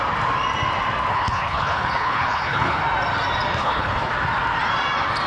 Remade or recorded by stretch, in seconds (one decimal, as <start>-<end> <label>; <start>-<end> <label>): 0.0-1.1 recorded; 1.1-2.8 remade; 2.8-3.6 recorded; 3.6-4.1 remade; 4.1-5.3 recorded